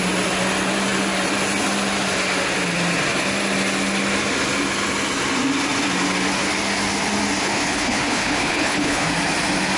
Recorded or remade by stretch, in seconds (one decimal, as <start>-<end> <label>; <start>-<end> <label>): 0.0-7.4 recorded; 7.4-9.1 remade; 9.1-9.8 recorded